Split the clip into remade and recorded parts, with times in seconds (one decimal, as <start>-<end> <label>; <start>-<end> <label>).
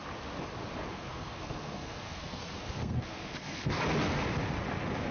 0.0-0.9 recorded; 0.9-3.8 remade; 3.8-5.1 recorded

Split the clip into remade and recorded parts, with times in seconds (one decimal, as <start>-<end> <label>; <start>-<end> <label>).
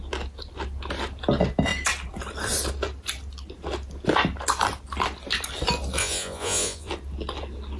0.0-6.0 recorded; 6.0-6.9 remade; 6.9-7.8 recorded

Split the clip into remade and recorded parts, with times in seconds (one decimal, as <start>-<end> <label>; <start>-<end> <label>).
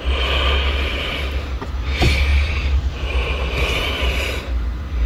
0.0-2.3 recorded; 2.3-2.9 remade; 2.9-5.1 recorded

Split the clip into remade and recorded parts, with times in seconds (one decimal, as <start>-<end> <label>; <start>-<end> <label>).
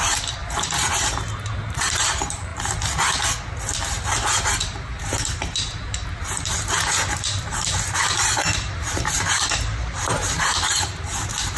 0.0-2.5 remade; 2.5-5.0 recorded; 5.0-11.6 remade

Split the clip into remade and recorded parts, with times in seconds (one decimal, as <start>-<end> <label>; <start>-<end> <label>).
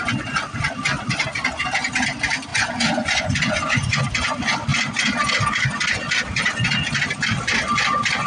0.0-2.5 recorded; 2.5-4.0 remade; 4.0-8.3 recorded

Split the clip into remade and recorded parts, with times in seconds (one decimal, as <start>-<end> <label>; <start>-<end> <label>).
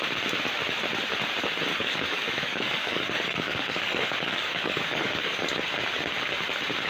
0.0-1.7 recorded; 1.7-5.5 remade; 5.5-6.9 recorded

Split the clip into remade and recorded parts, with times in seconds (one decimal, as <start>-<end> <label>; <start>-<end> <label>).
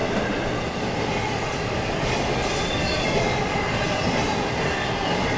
0.0-5.4 recorded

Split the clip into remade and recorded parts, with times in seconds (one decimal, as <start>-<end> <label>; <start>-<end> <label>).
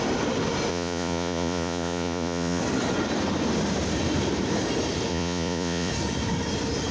0.0-0.7 recorded; 0.7-2.6 remade; 2.6-5.1 recorded; 5.1-5.9 remade; 5.9-6.9 recorded